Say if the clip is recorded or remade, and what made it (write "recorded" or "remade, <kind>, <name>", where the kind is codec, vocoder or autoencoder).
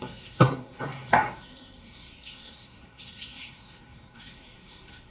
remade, codec, SNAC